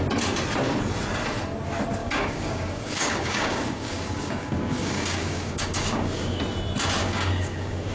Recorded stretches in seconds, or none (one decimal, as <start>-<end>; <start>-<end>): 0.0-2.0; 6.4-7.0